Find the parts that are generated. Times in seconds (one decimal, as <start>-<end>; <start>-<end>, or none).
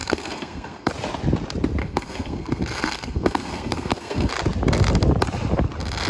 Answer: 0.0-0.9; 1.8-4.3